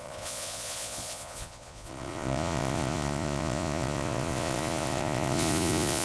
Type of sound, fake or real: fake